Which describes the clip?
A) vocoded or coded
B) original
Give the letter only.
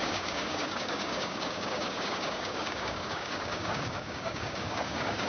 A